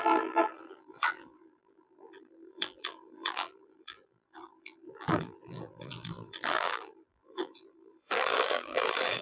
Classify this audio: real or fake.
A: fake